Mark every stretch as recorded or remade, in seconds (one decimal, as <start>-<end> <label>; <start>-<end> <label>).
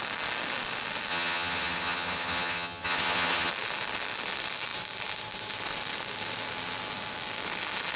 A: 0.0-1.1 recorded; 1.1-3.5 remade; 3.5-8.0 recorded